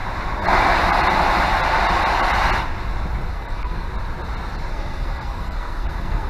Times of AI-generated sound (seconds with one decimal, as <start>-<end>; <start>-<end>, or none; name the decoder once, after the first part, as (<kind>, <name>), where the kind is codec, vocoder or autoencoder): 3.3-3.9 (codec, SNAC); 4.7-6.3